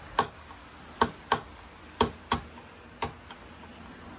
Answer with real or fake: real